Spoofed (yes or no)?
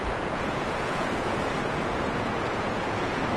yes